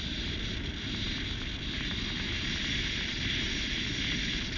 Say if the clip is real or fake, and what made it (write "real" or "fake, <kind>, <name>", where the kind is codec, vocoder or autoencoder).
real